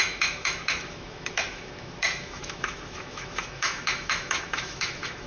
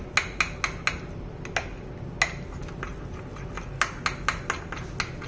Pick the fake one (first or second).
first